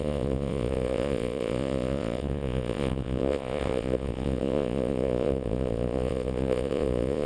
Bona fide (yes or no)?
no